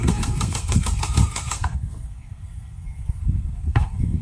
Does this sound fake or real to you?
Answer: fake